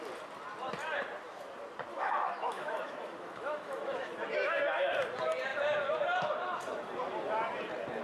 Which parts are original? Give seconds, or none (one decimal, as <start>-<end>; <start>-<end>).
0.0-1.9; 4.1-8.0

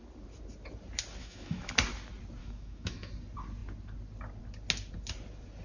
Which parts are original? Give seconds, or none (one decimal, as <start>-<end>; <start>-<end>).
0.0-1.2; 1.7-2.4; 3.1-5.6